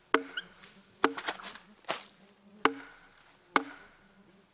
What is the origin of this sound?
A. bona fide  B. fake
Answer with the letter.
A